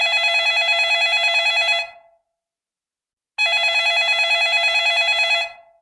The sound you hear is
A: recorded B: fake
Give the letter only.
A